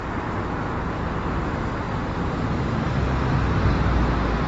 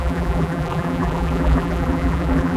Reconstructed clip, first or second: second